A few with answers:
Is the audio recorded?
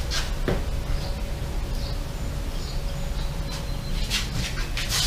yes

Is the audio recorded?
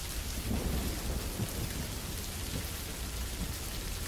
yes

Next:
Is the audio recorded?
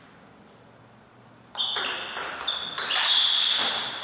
yes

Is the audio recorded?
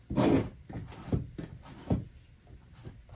yes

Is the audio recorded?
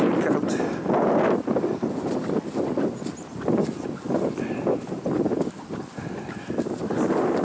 yes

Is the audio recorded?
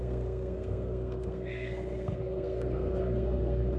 no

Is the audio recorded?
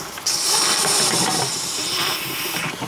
yes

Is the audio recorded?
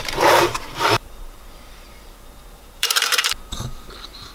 no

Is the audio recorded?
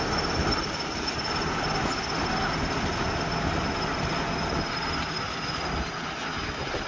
yes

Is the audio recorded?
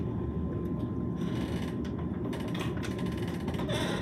yes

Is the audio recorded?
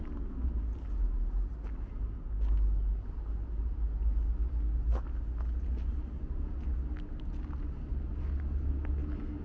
yes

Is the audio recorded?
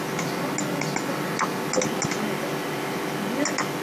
yes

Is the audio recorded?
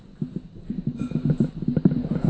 yes